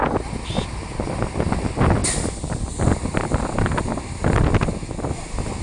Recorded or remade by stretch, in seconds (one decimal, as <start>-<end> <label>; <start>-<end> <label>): 0.0-5.6 recorded

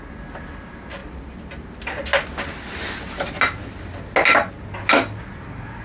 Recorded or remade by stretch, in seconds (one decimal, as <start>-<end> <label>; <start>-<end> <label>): 0.0-5.8 recorded

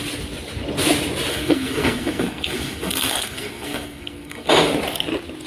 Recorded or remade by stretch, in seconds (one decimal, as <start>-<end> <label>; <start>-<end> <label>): 0.0-1.3 recorded; 1.3-4.5 remade; 4.5-5.5 recorded

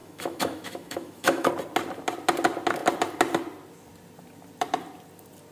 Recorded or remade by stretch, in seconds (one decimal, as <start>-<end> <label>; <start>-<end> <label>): 0.0-1.5 remade; 1.5-5.5 recorded

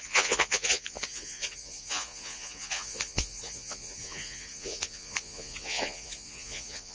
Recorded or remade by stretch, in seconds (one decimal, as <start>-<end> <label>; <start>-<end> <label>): 0.0-6.9 remade

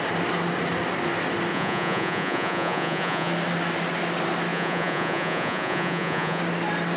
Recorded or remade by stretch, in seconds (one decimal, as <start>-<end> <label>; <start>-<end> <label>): 0.0-1.5 recorded; 1.5-3.3 remade; 3.3-4.5 recorded; 4.5-6.4 remade; 6.4-7.0 recorded

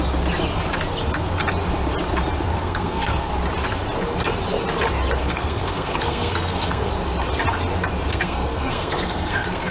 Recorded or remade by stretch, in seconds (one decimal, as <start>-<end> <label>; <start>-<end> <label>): 0.0-2.5 recorded; 2.5-3.3 remade; 3.3-5.2 recorded; 5.2-6.9 remade; 6.9-8.1 recorded; 8.1-9.7 remade

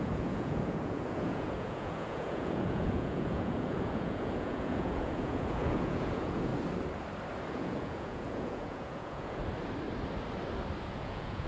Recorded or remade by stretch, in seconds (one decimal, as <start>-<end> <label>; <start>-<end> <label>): 0.0-6.5 remade; 6.5-7.5 recorded; 7.5-9.4 remade; 9.4-10.9 recorded; 10.9-11.5 remade